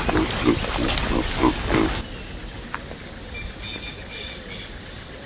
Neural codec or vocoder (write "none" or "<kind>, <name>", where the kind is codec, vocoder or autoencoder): none